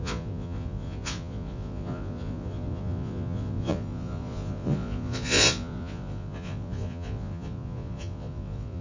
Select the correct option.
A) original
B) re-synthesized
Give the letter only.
B